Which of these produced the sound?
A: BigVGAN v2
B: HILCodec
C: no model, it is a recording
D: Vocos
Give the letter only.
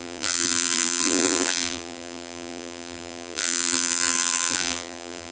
A